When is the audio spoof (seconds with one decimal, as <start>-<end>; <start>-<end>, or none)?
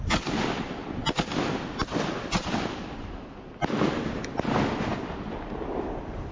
none